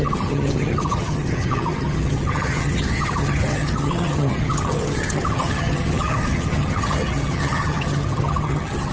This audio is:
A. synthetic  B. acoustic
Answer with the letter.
A